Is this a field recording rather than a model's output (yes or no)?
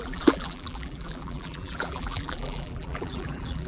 no